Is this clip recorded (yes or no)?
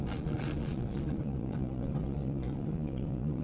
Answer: no